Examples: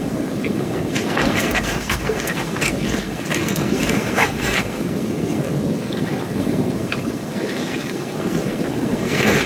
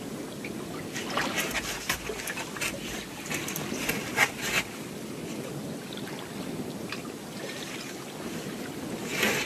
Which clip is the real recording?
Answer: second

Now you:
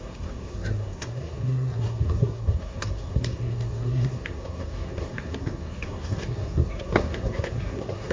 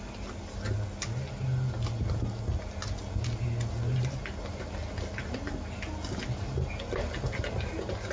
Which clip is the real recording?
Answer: second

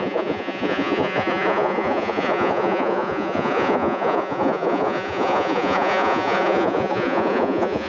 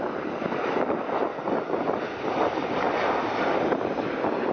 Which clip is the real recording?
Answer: second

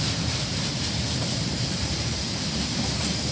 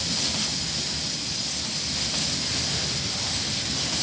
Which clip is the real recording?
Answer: second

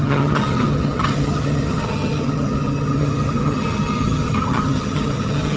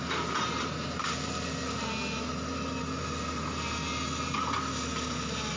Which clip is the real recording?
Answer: second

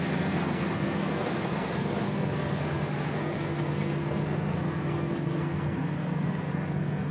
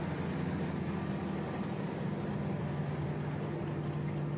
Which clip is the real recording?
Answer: second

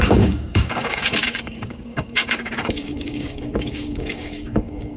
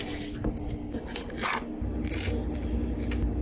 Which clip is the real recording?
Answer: second